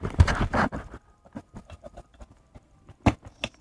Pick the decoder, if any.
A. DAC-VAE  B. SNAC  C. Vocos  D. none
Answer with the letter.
D